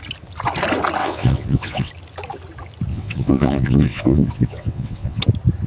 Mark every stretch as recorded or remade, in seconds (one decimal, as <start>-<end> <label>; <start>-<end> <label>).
0.0-1.0 recorded; 1.0-1.9 remade; 1.9-2.9 recorded; 2.9-5.2 remade; 5.2-5.7 recorded